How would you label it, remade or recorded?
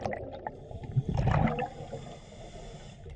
recorded